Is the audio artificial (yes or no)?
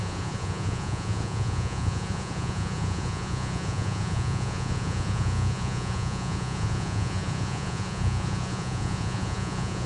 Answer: yes